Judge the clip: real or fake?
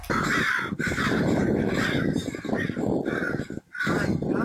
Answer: real